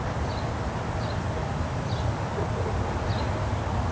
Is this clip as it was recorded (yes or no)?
yes